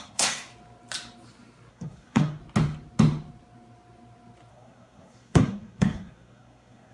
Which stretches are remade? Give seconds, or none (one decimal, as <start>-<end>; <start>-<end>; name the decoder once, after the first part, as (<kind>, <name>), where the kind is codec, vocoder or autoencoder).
0.0-0.5 (codec, SNAC); 1.7-2.4; 4.5-6.9